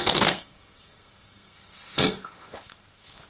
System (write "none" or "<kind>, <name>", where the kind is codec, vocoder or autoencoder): codec, SNAC